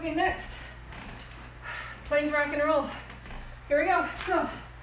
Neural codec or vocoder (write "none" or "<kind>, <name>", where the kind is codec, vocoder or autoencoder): none